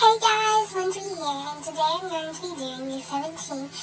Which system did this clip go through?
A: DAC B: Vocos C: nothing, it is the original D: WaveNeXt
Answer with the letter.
C